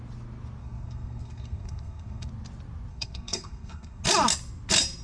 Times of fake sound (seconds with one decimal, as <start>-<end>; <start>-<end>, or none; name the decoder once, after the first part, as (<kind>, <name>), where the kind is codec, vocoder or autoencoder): 0.6-2.3 (codec, SNAC); 2.9-4.0